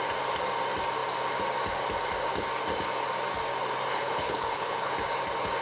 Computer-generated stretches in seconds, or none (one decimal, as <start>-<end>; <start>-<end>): 3.9-4.9